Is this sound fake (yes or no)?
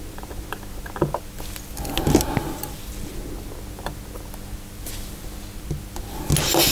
no